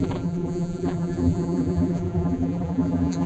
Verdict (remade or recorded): remade